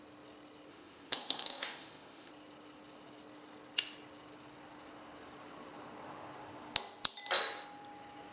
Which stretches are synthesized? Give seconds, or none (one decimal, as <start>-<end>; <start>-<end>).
0.7-2.3